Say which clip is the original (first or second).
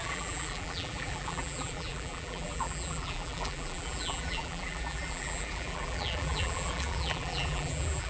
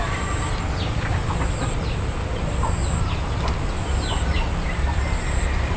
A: second